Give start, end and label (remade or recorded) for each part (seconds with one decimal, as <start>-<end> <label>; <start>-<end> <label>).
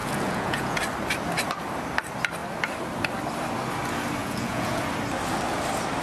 0.0-0.8 remade; 0.8-4.2 recorded; 4.2-4.9 remade; 4.9-6.0 recorded